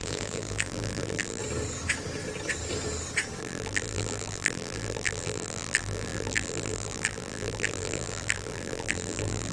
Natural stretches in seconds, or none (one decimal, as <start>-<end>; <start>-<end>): 1.4-3.4